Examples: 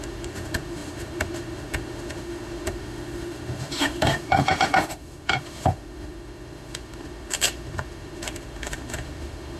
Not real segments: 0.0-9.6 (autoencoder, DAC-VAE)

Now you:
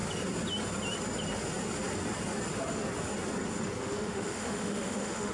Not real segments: 3.8-5.3 (autoencoder, DAC-VAE)

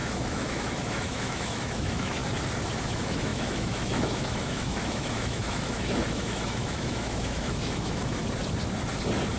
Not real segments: 0.0-2.2 (autoencoder, DAC-VAE); 2.8-8.2